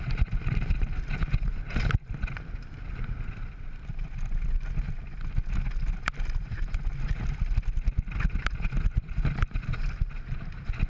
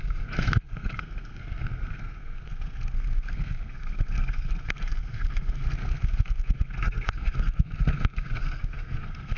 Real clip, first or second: first